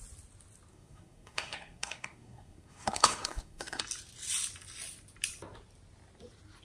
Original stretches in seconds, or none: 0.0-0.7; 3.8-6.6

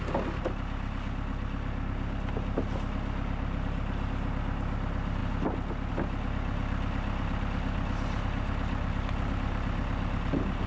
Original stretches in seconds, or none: 0.0-10.7